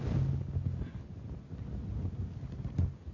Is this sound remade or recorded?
recorded